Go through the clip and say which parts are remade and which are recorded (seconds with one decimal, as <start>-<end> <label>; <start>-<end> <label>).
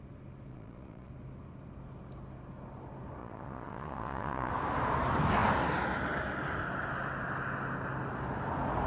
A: 0.0-0.5 recorded; 0.5-1.1 remade; 1.1-3.2 recorded; 3.2-4.5 remade; 4.5-8.9 recorded